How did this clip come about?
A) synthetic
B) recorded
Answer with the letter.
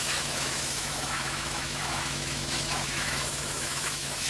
A